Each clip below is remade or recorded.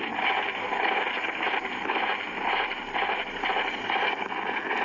recorded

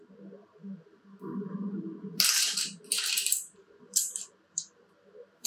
remade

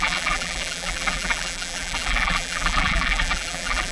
remade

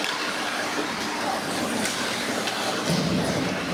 recorded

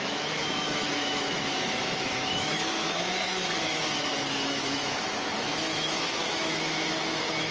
remade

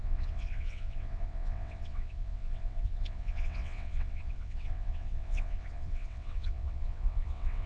remade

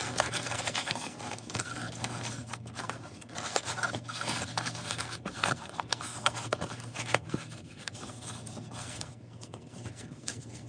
remade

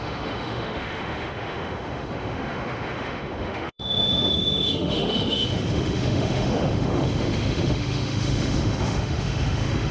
remade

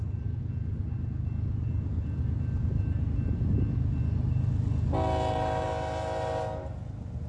recorded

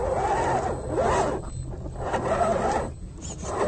recorded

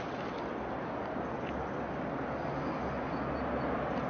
recorded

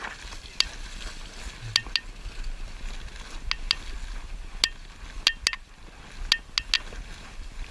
recorded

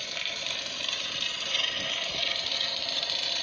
recorded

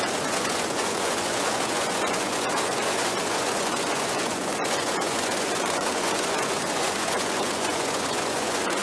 remade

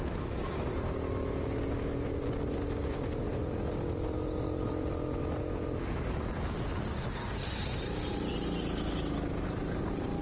recorded